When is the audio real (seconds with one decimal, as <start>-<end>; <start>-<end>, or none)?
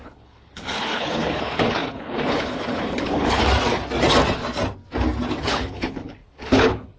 3.4-5.4